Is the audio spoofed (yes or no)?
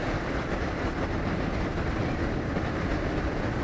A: no